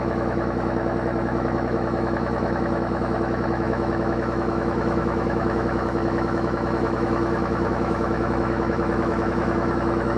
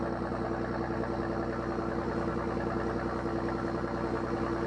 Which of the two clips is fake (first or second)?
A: first